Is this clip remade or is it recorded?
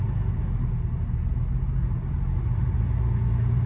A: recorded